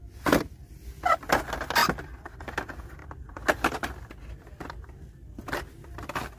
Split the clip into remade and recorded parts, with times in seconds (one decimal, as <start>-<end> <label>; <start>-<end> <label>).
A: 0.0-6.4 recorded